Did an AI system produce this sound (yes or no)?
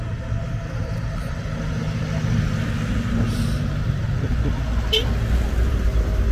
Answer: no